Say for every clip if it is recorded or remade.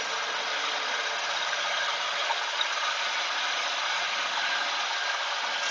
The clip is recorded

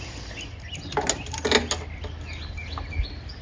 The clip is recorded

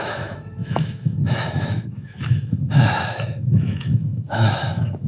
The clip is remade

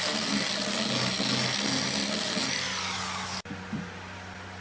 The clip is recorded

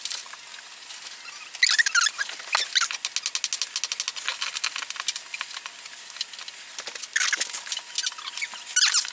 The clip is recorded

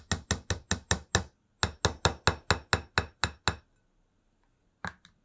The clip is recorded